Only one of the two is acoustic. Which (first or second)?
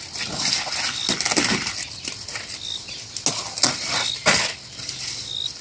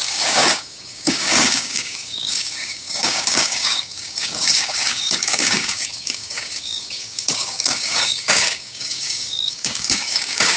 first